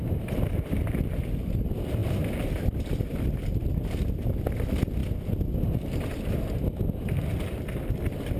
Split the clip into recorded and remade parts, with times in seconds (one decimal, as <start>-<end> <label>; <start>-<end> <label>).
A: 0.0-8.4 recorded